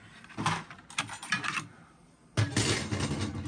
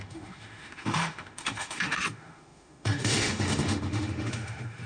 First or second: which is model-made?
second